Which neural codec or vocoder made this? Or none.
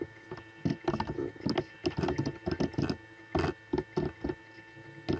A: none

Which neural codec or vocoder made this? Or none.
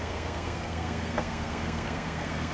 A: codec, SNAC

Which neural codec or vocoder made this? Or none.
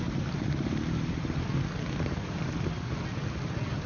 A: none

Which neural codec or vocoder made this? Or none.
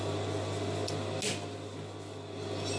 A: none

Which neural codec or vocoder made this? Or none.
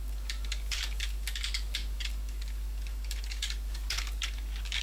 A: codec, DAC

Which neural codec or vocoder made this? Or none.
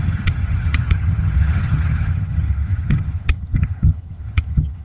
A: vocoder, HiFi-GAN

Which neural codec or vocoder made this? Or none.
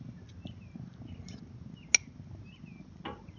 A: none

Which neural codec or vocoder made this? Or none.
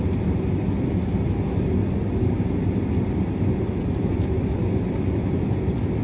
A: none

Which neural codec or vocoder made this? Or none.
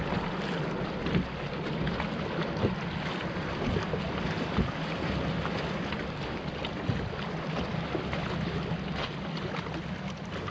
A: none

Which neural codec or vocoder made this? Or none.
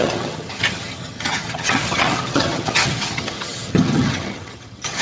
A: vocoder, HiFi-GAN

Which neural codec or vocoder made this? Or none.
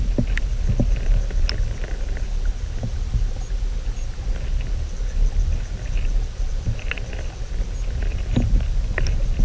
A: none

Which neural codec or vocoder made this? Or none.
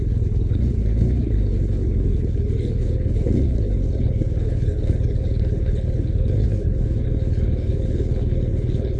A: codec, HILCodec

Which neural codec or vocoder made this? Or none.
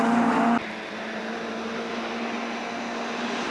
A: none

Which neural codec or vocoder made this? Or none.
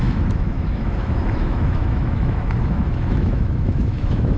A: autoencoder, DAC-VAE